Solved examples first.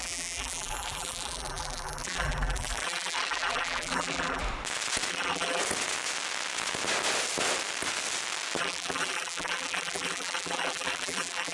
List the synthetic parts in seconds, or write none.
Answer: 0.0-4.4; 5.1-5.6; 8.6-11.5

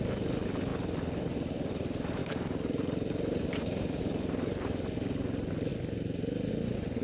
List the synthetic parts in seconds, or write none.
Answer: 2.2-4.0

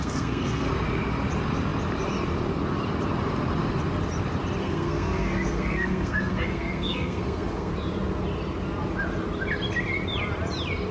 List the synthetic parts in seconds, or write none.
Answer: 0.0-0.7; 4.6-7.7

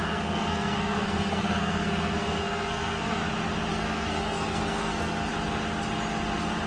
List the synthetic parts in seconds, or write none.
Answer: 0.0-3.2; 3.7-5.3